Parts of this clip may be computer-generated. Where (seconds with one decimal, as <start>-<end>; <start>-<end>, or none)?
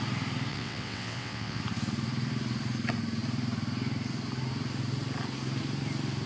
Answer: 0.5-1.6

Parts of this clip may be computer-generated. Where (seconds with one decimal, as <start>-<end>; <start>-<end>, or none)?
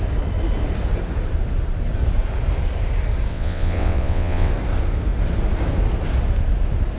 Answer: 3.3-4.5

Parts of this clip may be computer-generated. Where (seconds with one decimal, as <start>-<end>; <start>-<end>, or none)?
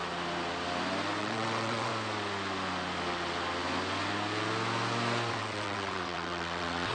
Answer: 1.2-1.9; 5.3-6.9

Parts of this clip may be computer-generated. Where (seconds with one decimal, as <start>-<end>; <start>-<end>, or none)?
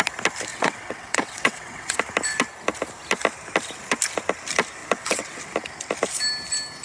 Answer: 0.5-2.0; 4.8-5.4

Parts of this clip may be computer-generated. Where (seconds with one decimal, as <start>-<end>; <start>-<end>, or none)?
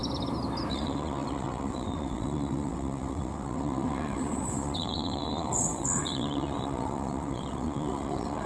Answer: 0.7-8.5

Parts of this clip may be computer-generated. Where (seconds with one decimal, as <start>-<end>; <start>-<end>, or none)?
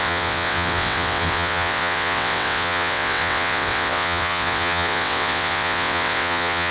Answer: 0.0-6.7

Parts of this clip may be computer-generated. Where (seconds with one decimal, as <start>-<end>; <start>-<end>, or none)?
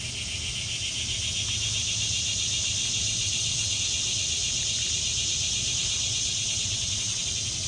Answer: 2.8-3.8; 6.3-7.2